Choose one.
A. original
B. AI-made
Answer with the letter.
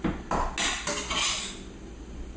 A